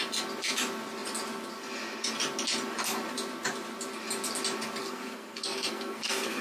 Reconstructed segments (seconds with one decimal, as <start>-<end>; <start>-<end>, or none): 4.8-6.4